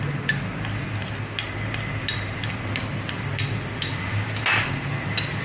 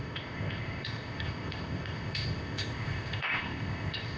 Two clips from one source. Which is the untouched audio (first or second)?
first